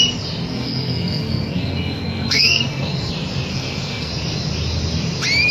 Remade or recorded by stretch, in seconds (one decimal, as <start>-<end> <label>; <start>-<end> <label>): 0.0-0.5 recorded; 0.5-3.1 remade; 3.1-3.5 recorded; 3.5-4.1 remade; 4.1-5.5 recorded